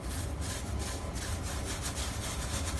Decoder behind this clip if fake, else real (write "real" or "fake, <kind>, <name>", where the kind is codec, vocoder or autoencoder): real